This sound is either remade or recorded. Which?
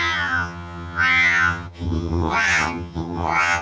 remade